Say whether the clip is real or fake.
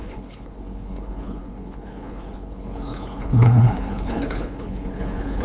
fake